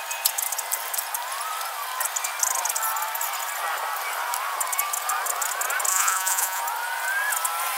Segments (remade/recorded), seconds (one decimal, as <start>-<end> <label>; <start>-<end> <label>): 0.0-5.9 recorded; 5.9-6.6 remade; 6.6-7.8 recorded